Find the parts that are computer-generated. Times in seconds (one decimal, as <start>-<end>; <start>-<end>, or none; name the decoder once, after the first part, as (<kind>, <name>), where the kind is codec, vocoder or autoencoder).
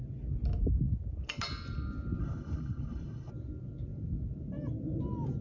2.2-3.3 (codec, HILCodec)